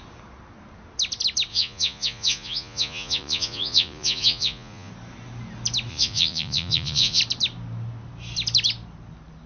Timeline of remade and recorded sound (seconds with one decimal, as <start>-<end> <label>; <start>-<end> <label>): 0.0-1.5 recorded; 1.5-4.9 remade; 4.9-5.9 recorded; 5.9-7.2 remade; 7.2-9.5 recorded